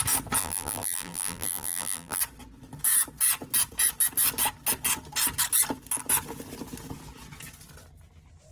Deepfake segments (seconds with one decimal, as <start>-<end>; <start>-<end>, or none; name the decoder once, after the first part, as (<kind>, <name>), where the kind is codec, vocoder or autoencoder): 0.4-2.2 (vocoder, BigVGAN v2)